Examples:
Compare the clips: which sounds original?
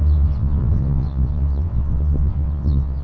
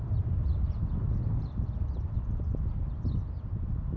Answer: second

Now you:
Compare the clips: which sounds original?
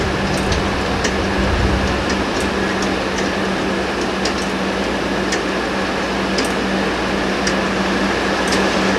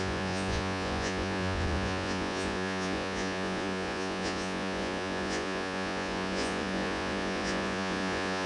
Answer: first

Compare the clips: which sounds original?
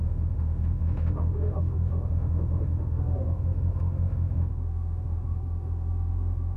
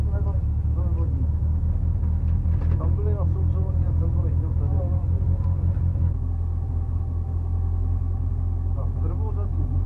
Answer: second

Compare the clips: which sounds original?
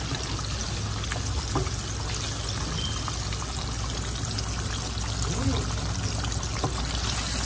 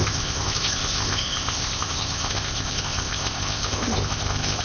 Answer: first